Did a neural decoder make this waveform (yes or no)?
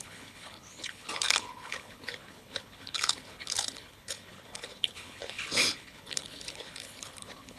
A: yes